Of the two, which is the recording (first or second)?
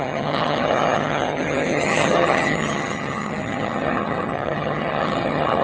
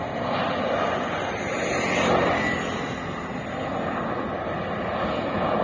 second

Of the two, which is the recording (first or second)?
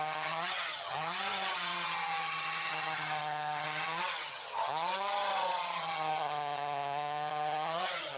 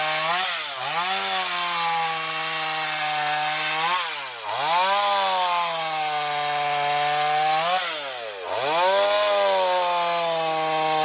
second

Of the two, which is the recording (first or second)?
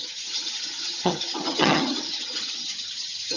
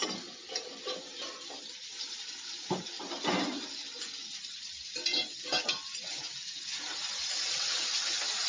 second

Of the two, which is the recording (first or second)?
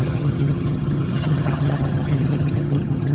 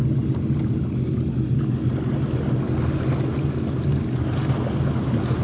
second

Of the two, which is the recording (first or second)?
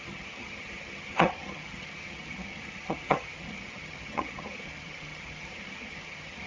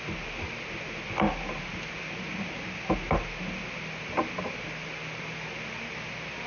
second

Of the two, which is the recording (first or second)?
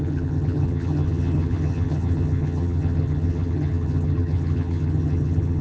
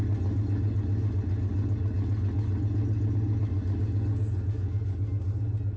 second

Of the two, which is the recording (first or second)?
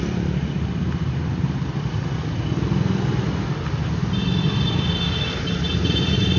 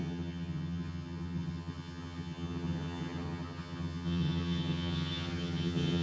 first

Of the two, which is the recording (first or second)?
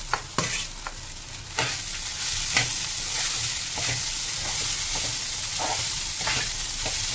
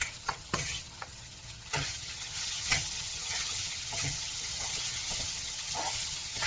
first